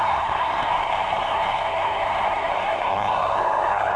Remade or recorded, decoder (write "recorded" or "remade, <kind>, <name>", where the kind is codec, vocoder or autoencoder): remade, codec, SNAC